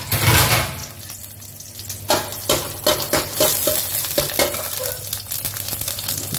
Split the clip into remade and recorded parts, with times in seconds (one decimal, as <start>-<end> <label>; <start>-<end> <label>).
0.0-6.4 recorded